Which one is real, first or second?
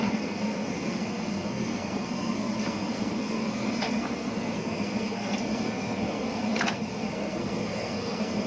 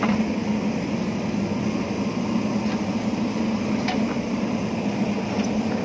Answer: second